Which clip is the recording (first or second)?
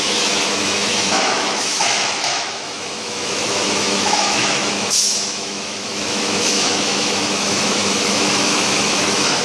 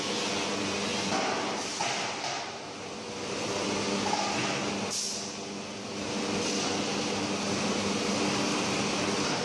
second